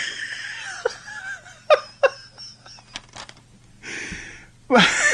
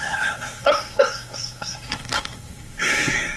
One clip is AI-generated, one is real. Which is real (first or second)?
first